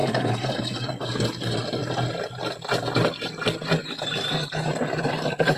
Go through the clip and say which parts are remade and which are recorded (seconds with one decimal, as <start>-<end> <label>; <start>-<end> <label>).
0.0-0.9 remade; 0.9-3.8 recorded; 3.8-5.6 remade